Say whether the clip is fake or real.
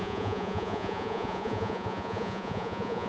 fake